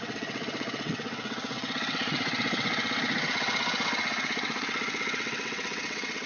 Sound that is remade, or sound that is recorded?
remade